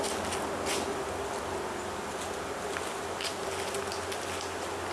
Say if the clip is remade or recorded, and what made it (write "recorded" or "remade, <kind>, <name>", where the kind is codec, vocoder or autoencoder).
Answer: recorded